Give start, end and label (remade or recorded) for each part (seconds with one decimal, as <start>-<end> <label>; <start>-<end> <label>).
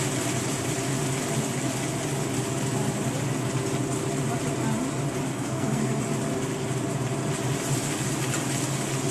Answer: 0.0-5.3 recorded; 5.3-6.0 remade; 6.0-9.1 recorded